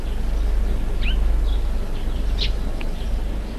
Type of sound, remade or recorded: recorded